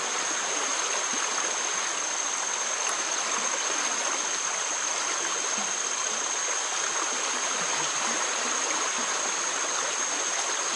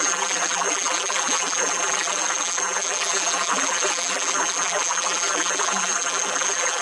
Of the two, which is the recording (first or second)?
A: first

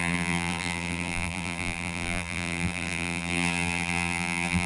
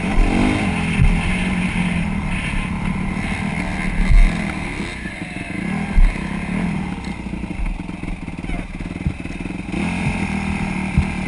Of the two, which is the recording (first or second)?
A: second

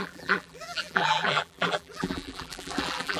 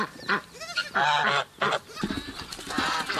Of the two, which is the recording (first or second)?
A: second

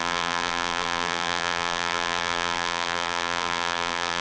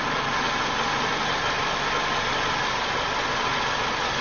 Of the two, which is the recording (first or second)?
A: second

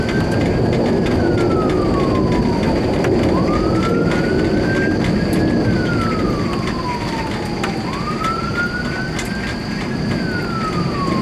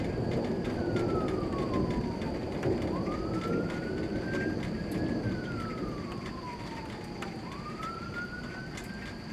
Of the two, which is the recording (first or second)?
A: first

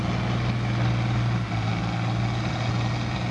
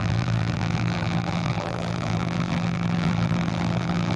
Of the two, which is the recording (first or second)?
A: first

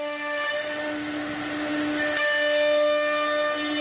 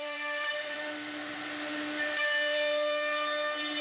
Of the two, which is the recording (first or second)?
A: first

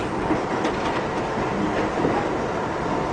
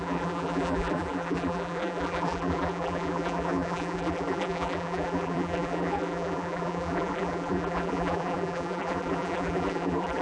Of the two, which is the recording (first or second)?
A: first